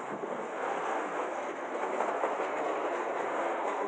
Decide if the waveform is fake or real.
fake